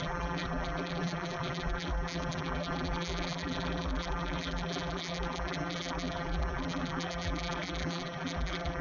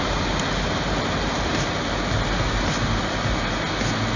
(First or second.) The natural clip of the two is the second